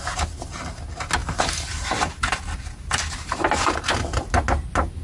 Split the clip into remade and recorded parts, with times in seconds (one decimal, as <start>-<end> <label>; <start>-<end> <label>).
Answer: 0.0-5.0 recorded